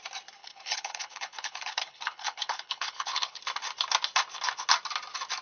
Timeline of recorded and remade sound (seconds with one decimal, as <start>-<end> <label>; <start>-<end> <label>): 0.0-0.4 recorded; 0.4-3.4 remade; 3.4-5.4 recorded